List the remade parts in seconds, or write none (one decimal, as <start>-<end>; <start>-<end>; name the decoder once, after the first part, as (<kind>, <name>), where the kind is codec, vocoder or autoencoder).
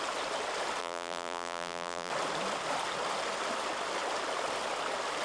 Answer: 0.8-2.1 (vocoder, BigVGAN v2)